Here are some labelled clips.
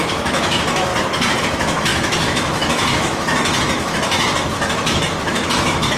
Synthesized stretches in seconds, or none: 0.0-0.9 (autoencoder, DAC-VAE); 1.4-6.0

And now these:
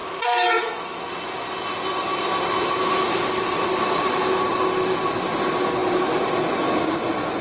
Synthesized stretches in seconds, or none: 0.0-1.0 (autoencoder, DAC-VAE)